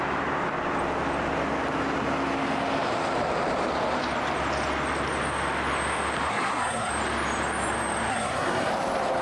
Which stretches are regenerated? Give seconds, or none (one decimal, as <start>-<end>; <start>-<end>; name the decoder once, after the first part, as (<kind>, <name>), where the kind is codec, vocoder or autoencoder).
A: 6.3-6.9 (codec, SNAC); 8.1-8.7